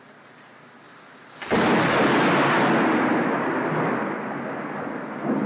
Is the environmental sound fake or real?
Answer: real